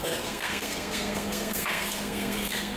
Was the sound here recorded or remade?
remade